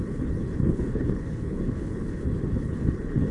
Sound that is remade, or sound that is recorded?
remade